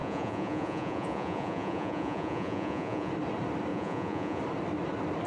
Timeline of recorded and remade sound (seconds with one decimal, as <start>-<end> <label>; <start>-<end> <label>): 0.0-3.1 remade; 3.1-3.7 recorded; 3.7-4.4 remade; 4.4-5.3 recorded